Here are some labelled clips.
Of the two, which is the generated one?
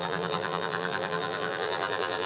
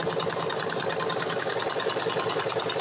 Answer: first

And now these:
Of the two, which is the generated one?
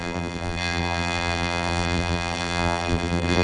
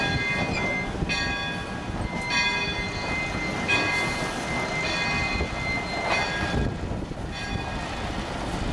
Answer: first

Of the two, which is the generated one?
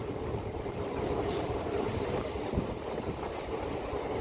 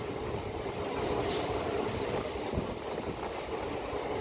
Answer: first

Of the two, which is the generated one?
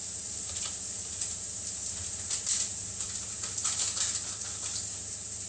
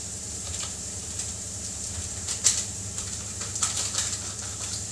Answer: second